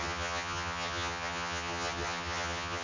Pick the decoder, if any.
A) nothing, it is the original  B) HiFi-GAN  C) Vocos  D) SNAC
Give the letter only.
B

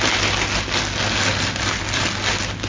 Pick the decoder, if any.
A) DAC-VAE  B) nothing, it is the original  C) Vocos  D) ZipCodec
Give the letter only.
B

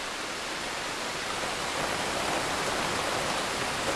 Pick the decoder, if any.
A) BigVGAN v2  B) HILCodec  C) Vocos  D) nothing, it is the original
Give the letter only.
D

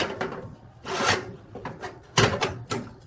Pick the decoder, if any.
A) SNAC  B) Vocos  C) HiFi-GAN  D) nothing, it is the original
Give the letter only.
D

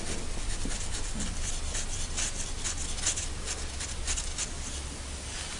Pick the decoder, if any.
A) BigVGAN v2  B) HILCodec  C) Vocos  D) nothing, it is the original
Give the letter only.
D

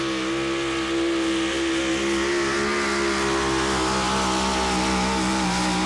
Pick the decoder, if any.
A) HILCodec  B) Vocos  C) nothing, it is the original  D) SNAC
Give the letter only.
C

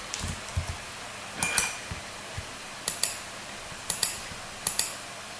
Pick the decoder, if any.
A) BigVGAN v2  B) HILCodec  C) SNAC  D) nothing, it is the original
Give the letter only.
D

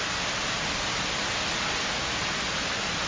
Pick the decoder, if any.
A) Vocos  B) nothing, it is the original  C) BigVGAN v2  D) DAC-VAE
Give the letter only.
B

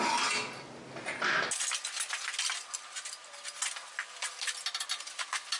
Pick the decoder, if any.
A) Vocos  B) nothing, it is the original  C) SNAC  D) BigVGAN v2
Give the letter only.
B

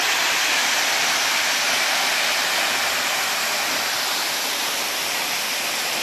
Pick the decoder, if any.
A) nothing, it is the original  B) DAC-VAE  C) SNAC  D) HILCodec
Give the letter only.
A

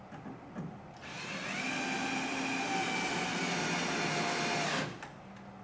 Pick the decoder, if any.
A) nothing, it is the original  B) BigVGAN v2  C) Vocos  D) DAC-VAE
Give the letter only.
A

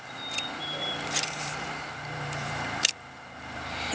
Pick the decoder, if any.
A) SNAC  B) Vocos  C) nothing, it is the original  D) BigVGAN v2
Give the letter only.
D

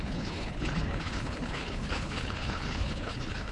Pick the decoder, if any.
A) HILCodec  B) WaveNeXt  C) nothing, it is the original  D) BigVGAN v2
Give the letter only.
A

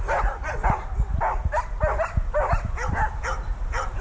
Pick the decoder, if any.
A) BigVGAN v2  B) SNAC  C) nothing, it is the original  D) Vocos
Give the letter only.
C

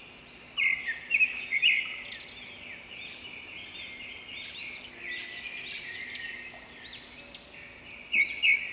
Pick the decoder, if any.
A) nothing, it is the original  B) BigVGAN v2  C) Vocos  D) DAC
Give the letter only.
A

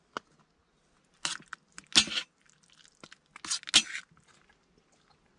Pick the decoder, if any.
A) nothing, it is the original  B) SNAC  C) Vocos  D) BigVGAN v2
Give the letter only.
A